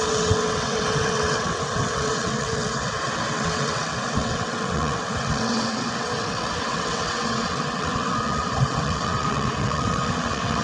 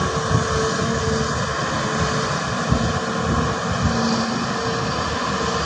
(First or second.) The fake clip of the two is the first